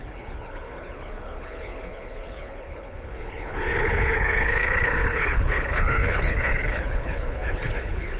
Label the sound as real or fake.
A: fake